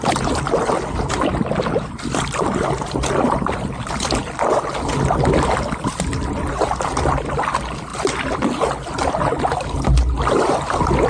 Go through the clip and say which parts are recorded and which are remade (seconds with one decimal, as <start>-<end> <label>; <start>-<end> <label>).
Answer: 0.0-11.1 recorded